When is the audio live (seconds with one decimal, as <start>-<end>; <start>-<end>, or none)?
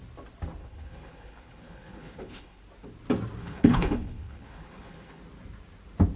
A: 0.0-0.6; 2.6-3.4; 5.2-6.2